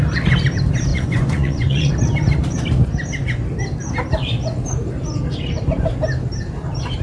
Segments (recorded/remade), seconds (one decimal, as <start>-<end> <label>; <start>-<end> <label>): 0.0-0.9 recorded; 0.9-1.9 remade; 1.9-7.0 recorded